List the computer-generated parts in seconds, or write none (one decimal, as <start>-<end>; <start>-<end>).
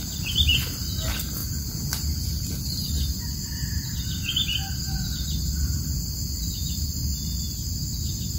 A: 3.5-4.2